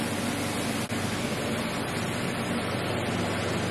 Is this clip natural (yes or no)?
yes